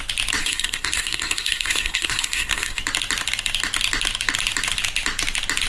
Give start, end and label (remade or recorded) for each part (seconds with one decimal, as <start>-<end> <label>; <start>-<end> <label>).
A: 0.0-0.4 recorded; 0.4-2.8 remade; 2.8-5.7 recorded